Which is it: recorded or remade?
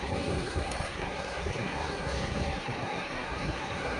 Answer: remade